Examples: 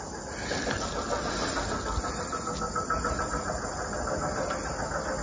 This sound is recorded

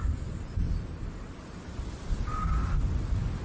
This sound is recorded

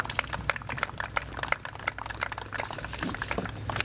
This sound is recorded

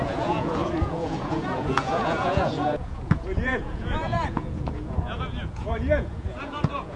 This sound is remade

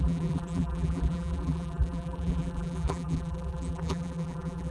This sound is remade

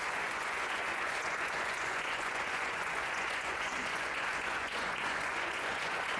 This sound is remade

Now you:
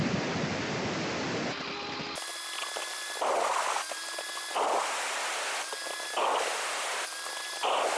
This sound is recorded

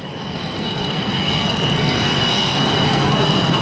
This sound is remade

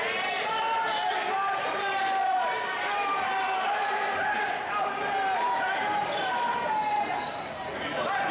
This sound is recorded